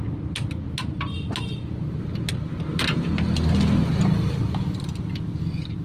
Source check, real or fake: real